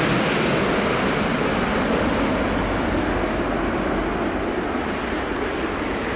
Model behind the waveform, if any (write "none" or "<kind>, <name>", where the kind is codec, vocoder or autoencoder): none